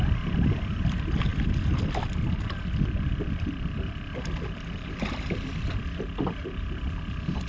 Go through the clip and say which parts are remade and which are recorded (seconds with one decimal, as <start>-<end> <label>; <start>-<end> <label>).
0.0-7.5 recorded